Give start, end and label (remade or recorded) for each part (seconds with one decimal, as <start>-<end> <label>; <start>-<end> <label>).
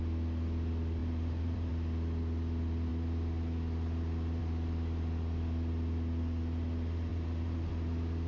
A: 0.0-1.0 recorded; 1.0-1.7 remade; 1.7-7.1 recorded; 7.1-7.7 remade; 7.7-8.3 recorded